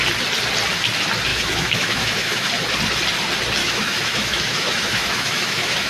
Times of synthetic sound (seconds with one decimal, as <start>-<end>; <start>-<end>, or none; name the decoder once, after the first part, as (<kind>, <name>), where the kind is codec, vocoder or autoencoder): 1.3-2.5 (autoencoder, DAC-VAE); 3.6-5.9